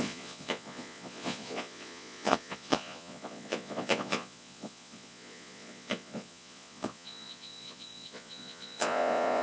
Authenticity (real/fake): fake